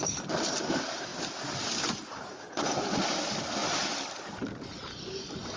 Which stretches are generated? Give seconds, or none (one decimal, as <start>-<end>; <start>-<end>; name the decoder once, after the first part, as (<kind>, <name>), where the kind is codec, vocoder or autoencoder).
1.1-3.1 (vocoder, BigVGAN v2)